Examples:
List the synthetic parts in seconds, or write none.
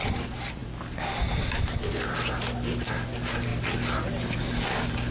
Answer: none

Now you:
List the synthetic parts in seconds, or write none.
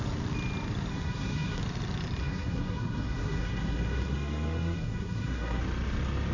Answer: 0.9-1.6 (codec, SNAC); 2.2-5.6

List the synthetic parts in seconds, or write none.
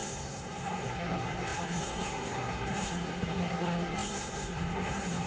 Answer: 0.0-5.3 (codec, SNAC)